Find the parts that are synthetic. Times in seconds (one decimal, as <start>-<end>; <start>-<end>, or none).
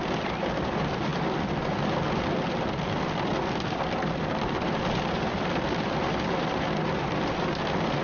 none